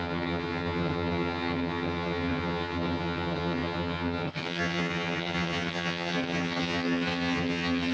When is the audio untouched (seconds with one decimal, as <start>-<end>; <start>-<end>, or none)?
none